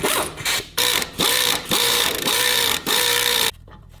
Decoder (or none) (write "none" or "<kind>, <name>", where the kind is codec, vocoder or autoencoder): vocoder, BigVGAN v2